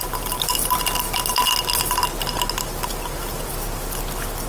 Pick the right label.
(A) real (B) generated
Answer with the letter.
A